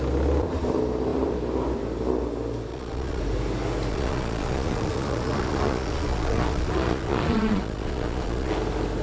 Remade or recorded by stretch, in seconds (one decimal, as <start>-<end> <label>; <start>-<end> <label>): 0.0-2.7 recorded; 2.7-3.2 remade; 3.2-3.9 recorded; 3.9-8.5 remade; 8.5-9.0 recorded

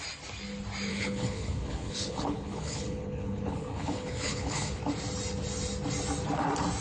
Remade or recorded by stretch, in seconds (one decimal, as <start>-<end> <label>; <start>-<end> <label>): 0.0-0.9 recorded; 0.9-4.8 remade; 4.8-6.8 recorded

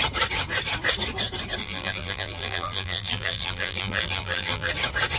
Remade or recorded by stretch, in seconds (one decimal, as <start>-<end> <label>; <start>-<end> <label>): 0.0-1.6 recorded; 1.6-4.7 remade; 4.7-5.2 recorded

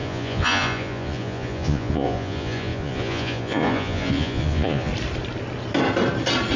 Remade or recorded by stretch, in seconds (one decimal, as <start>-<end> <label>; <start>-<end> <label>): 0.0-4.9 remade; 4.9-6.6 recorded

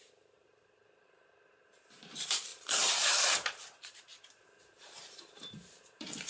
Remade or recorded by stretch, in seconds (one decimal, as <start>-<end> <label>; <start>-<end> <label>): 0.0-6.3 remade

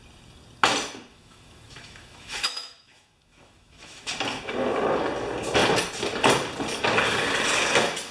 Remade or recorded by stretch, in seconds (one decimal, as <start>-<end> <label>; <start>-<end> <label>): 0.0-1.1 recorded; 1.1-4.1 remade; 4.1-8.1 recorded

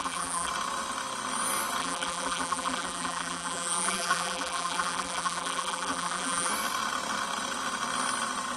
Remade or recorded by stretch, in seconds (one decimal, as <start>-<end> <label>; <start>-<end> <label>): 0.0-0.5 remade; 0.5-1.8 recorded; 1.8-6.5 remade; 6.5-8.6 recorded

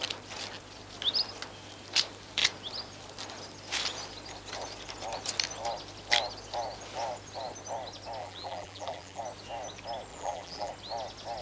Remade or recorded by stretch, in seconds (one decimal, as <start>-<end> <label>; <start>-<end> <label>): 0.0-8.2 recorded; 8.2-9.2 remade; 9.2-10.1 recorded; 10.1-10.7 remade; 10.7-11.4 recorded